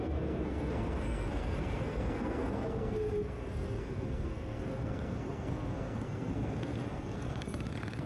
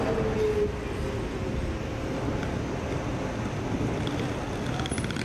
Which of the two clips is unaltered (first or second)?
second